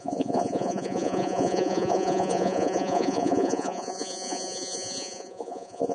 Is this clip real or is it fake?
fake